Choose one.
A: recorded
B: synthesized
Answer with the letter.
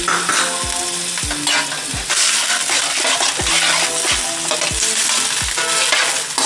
A